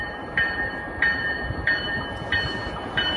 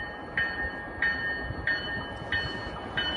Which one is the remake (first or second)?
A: first